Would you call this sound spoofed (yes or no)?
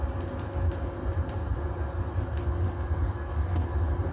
no